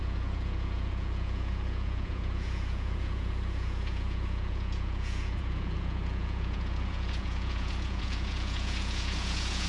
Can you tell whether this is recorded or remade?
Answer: remade